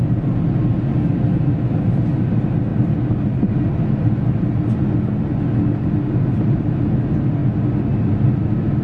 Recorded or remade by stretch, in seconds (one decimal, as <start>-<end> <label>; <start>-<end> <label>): 0.0-8.8 recorded